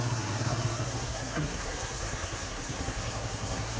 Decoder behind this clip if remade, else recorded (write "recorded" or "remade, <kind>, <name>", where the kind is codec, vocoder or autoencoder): remade, codec, SNAC